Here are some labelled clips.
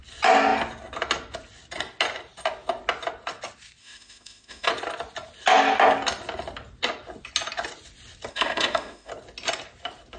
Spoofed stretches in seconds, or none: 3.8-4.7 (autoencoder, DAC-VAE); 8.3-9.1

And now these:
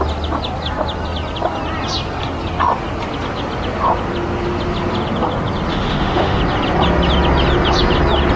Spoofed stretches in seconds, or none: 5.7-6.4 (autoencoder, DAC-VAE)

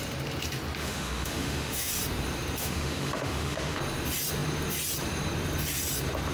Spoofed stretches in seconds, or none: 0.8-1.9 (autoencoder, DAC-VAE); 2.6-3.8

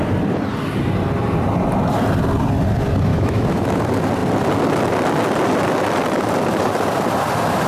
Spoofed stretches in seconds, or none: 3.1-3.8 (autoencoder, DAC-VAE)

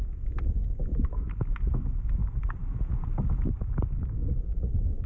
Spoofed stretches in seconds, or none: none

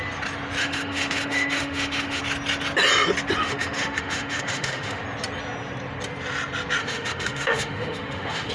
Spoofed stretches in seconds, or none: 0.6-2.2 (autoencoder, DAC-VAE); 3.4-5.0; 6.8-8.5

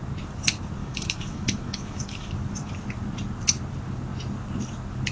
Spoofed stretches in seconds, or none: 0.8-2.3 (autoencoder, DAC-VAE)